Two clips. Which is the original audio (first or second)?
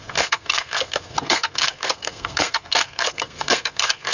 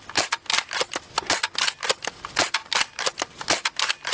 second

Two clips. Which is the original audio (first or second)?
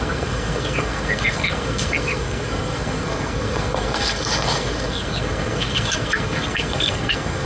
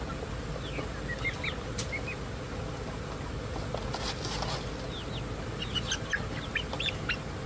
second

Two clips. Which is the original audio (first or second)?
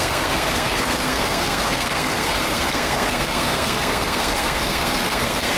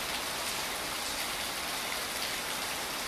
second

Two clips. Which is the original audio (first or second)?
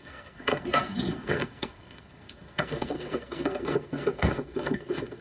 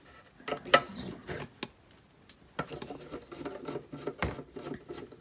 second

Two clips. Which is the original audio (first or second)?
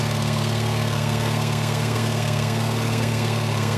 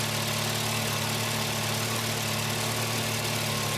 second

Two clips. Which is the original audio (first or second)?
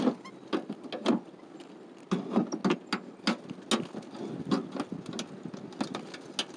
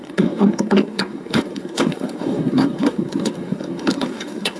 first